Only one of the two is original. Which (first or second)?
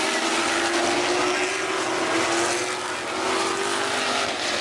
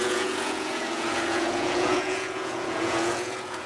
first